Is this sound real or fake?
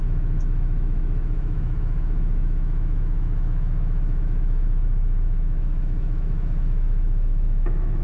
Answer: fake